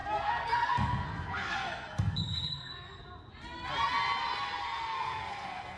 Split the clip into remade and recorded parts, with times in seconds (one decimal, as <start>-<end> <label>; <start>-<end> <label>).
0.0-3.0 remade; 3.0-4.6 recorded; 4.6-5.8 remade